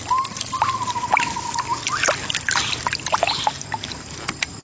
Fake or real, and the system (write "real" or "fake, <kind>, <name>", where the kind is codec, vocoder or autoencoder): real